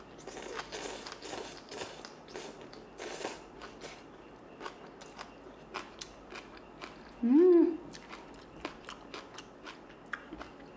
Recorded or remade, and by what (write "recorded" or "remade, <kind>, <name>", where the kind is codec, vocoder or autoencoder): recorded